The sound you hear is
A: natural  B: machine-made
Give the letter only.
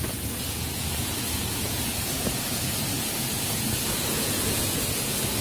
B